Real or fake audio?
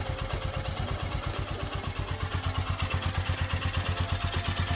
real